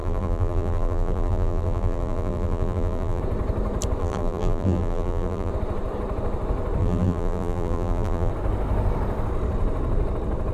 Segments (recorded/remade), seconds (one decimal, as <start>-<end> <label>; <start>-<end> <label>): 0.0-3.2 remade; 3.2-4.0 recorded; 4.0-5.5 remade; 5.5-6.8 recorded; 6.8-8.3 remade; 8.3-10.5 recorded